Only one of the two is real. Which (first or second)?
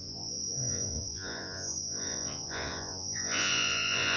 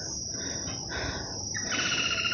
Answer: second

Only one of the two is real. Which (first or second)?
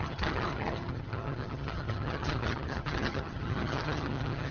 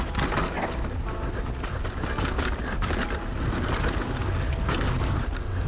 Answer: second